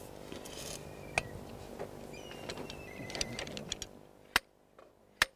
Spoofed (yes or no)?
no